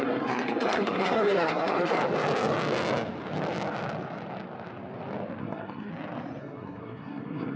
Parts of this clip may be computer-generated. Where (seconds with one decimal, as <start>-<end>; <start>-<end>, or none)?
0.0-2.0; 5.4-5.9; 6.4-7.6